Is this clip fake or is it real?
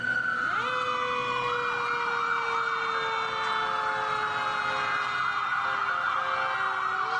real